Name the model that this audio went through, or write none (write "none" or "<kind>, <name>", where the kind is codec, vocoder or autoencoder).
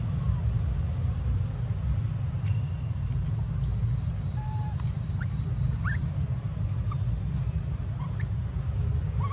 none